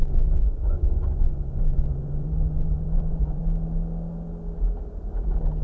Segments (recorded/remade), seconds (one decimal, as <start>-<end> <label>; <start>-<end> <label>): 0.0-3.4 remade; 3.4-5.6 recorded